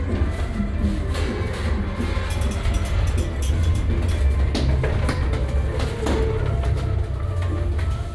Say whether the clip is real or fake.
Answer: real